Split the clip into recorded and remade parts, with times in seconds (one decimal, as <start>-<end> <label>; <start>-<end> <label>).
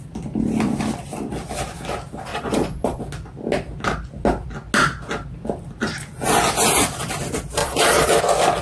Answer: 0.0-2.3 recorded; 2.3-3.0 remade; 3.0-7.6 recorded; 7.6-8.2 remade; 8.2-8.6 recorded